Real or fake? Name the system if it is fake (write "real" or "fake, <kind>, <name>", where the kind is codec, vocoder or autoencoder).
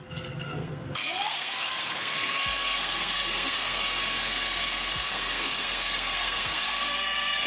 fake, codec, SNAC